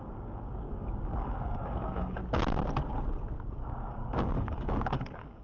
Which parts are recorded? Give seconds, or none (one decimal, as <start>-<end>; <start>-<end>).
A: 2.2-3.4